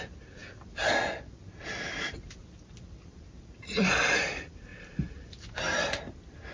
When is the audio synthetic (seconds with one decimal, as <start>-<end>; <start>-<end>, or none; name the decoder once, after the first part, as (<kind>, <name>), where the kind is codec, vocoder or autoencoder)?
none